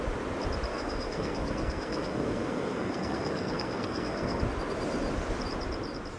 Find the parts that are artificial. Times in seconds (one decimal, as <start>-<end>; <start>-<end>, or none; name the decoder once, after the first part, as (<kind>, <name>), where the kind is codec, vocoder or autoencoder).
0.7-4.4 (codec, SNAC)

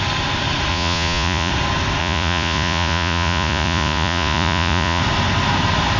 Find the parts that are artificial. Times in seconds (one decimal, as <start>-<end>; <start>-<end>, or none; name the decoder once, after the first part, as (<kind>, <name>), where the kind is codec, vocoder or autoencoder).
0.7-1.5 (vocoder, Vocos); 2.0-5.0

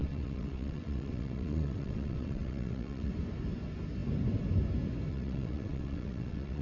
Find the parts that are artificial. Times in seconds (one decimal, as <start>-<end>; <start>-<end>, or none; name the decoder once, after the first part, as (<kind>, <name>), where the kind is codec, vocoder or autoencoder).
0.0-3.1 (vocoder, WaveNeXt); 5.1-6.6